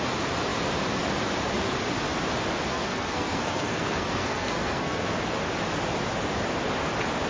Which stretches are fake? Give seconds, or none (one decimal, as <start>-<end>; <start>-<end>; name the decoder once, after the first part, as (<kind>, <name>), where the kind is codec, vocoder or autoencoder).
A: 2.7-5.1 (codec, SNAC)